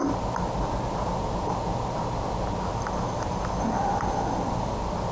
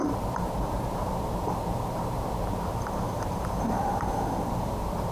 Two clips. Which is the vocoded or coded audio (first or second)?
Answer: second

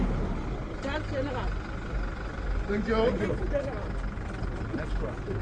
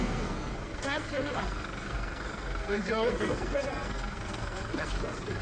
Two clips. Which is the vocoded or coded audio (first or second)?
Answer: second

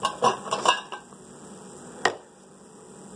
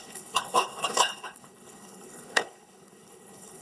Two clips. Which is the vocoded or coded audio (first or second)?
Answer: second